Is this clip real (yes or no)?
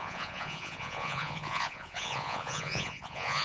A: no